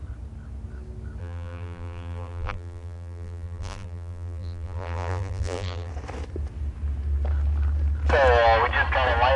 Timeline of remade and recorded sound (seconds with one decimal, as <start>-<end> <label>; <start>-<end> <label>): 0.0-1.2 recorded; 1.2-5.9 remade; 5.9-9.4 recorded